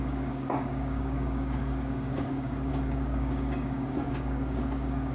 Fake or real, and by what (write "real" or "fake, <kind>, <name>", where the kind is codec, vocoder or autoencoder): fake, codec, DAC